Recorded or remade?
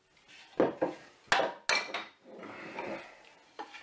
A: recorded